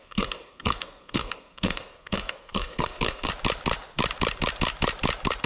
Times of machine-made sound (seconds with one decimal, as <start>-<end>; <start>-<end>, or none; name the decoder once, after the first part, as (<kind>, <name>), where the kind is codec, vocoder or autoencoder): 0.0-3.3 (codec, SNAC)